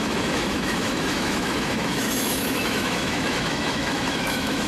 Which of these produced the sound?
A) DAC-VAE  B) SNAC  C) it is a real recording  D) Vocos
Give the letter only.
A